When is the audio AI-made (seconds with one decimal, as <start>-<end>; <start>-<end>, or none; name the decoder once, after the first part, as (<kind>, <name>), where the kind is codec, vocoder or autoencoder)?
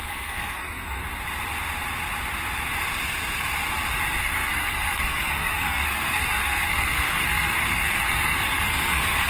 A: 0.0-1.0 (codec, SNAC); 4.2-9.3